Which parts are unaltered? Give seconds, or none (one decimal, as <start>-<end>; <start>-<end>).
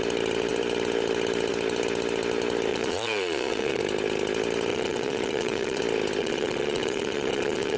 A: 0.0-2.7; 3.8-4.7; 5.8-6.2